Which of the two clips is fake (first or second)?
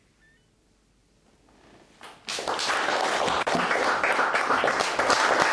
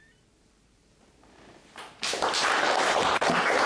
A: second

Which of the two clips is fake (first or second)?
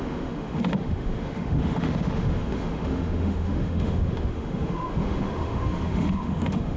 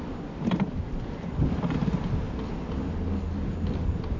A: first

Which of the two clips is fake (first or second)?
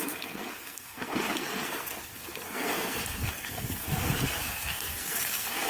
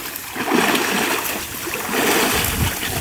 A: first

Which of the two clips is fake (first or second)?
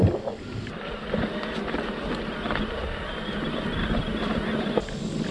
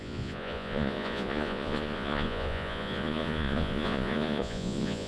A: second